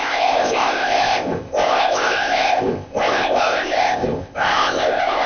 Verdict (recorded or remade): remade